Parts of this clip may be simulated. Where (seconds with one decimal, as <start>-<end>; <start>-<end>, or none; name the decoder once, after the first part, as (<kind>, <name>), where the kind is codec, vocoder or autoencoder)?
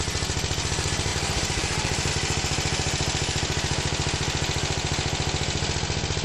1.1-2.1 (vocoder, BigVGAN v2)